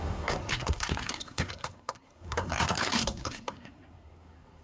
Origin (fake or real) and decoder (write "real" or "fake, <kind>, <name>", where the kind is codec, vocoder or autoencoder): fake, codec, SNAC